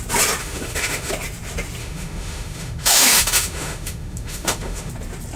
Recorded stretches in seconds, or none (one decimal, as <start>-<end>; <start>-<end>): 0.0-0.4; 1.1-1.8; 4.9-5.4